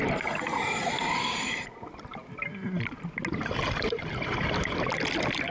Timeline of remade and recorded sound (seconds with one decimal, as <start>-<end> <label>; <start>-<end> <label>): 0.0-5.5 recorded